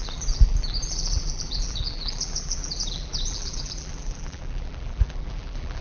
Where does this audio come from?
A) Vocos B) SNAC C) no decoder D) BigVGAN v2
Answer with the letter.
D